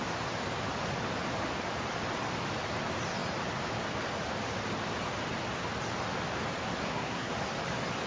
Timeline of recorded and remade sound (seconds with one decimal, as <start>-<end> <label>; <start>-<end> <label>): 0.0-6.8 recorded; 6.8-7.3 remade; 7.3-8.1 recorded